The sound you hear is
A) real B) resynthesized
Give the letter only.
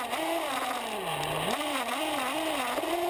A